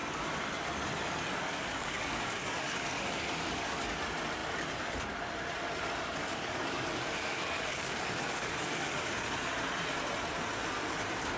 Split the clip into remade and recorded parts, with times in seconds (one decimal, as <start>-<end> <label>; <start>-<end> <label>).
0.0-1.4 recorded; 1.4-4.0 remade; 4.0-6.2 recorded; 6.2-9.3 remade; 9.3-11.4 recorded